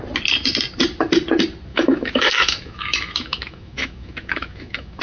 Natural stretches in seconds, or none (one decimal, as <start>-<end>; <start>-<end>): 0.0-1.7